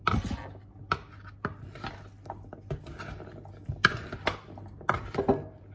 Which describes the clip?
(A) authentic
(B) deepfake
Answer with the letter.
A